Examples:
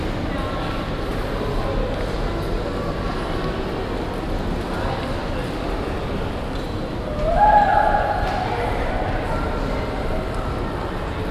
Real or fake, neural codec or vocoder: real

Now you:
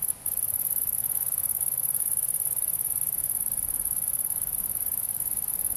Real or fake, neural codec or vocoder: fake, autoencoder, DAC-VAE